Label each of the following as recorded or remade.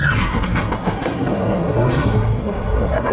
remade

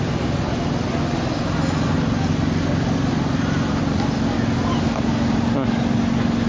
recorded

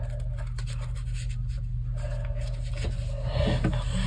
recorded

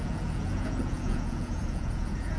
remade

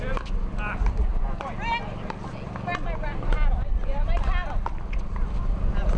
recorded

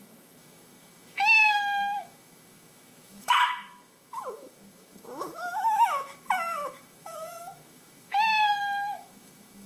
remade